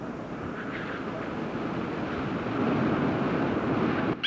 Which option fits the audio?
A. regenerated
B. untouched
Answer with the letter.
B